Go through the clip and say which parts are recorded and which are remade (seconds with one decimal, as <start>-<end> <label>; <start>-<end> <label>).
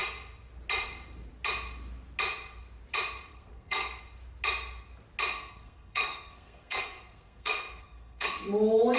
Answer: 0.0-3.3 recorded; 3.3-4.0 remade; 4.0-5.3 recorded; 5.3-8.5 remade; 8.5-9.0 recorded